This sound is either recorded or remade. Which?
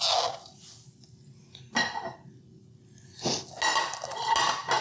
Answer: recorded